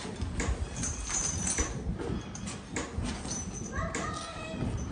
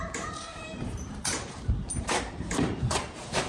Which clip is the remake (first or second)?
second